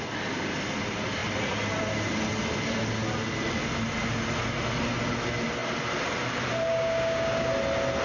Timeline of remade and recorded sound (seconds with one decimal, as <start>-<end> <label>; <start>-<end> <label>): 0.0-6.7 recorded; 6.7-7.5 remade; 7.5-8.0 recorded